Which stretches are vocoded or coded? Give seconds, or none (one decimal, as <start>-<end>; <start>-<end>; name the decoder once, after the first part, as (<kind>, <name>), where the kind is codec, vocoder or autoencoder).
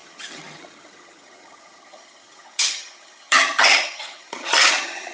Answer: 0.0-5.1 (vocoder, HiFi-GAN)